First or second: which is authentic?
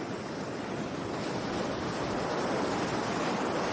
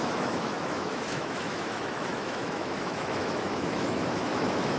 first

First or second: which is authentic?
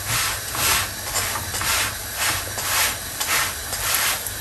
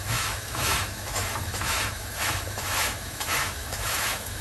first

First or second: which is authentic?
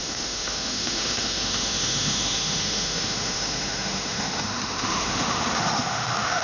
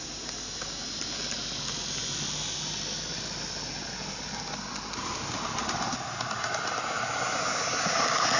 second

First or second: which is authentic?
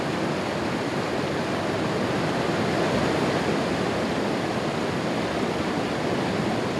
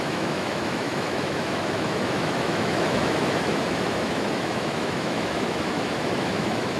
first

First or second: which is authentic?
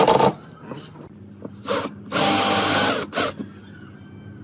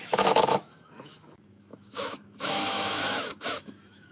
first